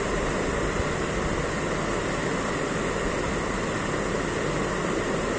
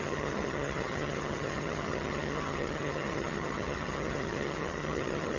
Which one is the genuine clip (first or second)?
first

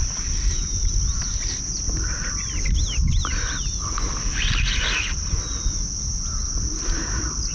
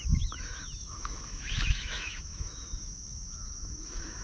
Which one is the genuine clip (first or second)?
first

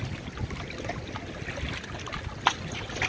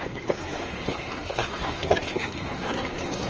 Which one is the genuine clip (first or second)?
first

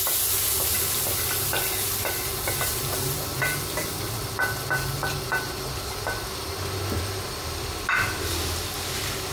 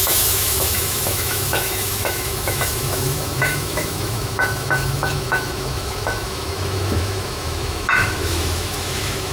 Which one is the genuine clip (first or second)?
first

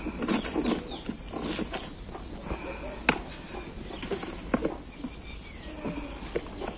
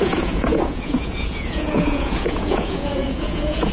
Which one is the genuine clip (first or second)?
first